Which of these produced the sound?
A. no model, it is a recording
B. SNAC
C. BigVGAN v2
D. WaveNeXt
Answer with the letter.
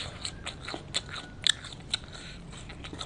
A